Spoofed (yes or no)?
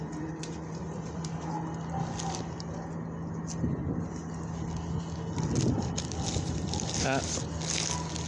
no